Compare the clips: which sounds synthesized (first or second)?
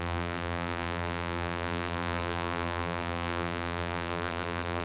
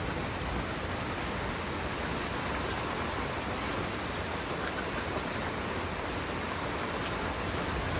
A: first